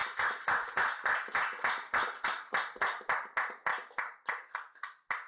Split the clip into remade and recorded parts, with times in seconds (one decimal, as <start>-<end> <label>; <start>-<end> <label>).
0.0-5.3 recorded